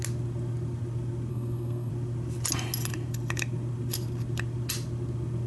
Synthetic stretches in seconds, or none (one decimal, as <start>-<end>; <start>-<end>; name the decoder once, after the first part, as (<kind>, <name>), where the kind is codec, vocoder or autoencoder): 1.3-1.9 (codec, SNAC)

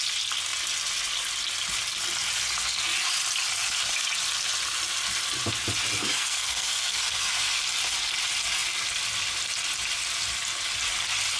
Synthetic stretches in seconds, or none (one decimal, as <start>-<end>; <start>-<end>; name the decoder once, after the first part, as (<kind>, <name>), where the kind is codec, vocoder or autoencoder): 6.0-7.6 (codec, SNAC)

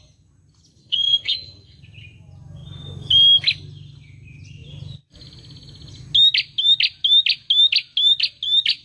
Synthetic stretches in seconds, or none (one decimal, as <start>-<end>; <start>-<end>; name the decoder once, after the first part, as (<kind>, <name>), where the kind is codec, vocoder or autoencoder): 0.8-1.8 (codec, SNAC)